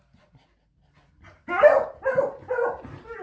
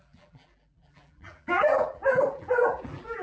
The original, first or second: first